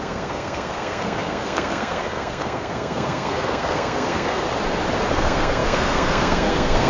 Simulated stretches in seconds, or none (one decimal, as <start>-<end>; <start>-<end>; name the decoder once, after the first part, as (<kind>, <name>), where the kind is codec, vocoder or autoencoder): 0.0-4.5 (codec, SNAC); 5.1-6.9